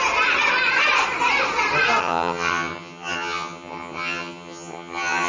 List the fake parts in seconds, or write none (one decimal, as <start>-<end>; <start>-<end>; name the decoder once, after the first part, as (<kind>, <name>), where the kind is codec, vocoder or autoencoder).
2.0-5.3 (vocoder, HiFi-GAN)